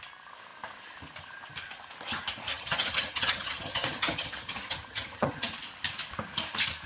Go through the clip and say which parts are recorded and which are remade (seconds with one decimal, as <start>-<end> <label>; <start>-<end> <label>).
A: 0.0-2.5 recorded; 2.5-5.5 remade; 5.5-6.9 recorded